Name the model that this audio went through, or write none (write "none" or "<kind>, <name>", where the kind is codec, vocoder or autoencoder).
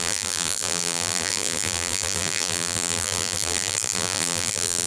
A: vocoder, BigVGAN v2